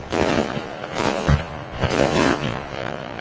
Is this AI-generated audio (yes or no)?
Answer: yes